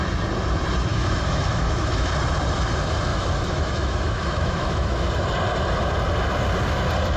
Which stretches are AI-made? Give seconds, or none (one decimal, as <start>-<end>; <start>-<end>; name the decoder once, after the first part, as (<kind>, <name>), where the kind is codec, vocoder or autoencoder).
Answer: 0.9-2.1 (autoencoder, DAC-VAE); 3.1-5.1